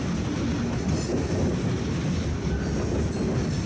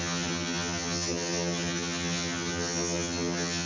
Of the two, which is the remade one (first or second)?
second